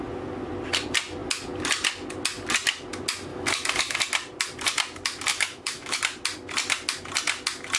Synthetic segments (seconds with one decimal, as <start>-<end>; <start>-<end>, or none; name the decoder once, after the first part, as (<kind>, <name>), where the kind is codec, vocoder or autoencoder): 3.3-4.0 (autoencoder, DAC-VAE); 5.3-6.0